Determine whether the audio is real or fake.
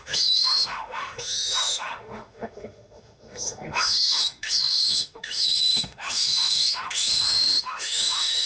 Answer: fake